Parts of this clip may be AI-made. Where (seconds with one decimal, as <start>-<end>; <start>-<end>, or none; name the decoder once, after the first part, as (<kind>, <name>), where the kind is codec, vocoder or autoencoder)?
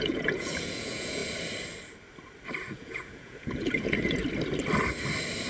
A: 0.0-1.2 (vocoder, Vocos); 2.7-4.2